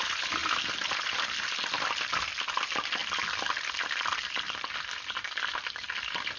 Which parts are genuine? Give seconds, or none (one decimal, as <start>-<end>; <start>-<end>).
0.0-6.4